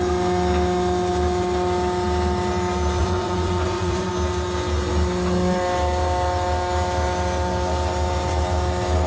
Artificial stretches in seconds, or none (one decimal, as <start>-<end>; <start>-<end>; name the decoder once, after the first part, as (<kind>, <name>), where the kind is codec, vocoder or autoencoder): 3.0-4.1 (vocoder, Vocos)